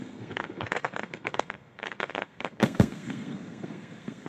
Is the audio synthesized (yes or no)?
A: yes